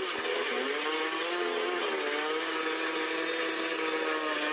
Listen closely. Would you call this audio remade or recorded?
recorded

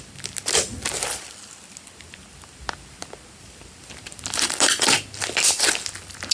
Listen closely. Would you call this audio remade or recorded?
recorded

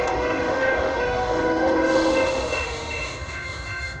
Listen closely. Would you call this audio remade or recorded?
remade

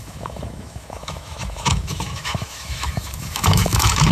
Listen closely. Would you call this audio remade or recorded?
remade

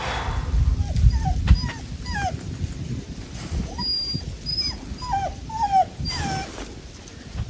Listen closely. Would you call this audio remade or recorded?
recorded